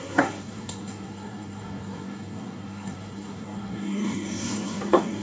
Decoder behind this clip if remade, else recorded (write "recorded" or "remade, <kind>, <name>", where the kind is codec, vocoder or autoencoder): remade, codec, SNAC